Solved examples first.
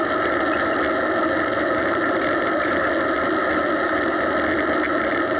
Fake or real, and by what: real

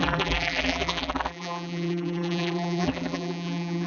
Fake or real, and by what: fake, vocoder, BigVGAN v2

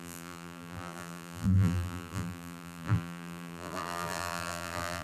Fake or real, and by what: fake, vocoder, BigVGAN v2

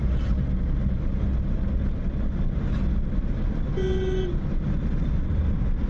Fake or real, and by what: real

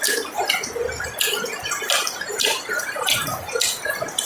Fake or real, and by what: real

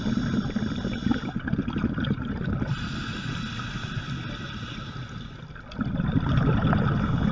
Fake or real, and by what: real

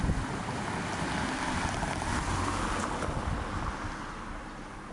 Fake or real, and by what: real